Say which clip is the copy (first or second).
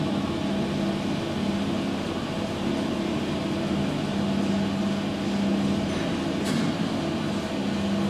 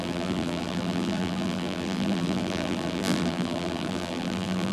second